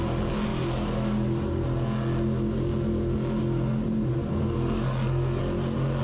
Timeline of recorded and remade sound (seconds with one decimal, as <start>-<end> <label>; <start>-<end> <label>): 0.0-4.2 recorded; 4.2-5.4 remade; 5.4-6.0 recorded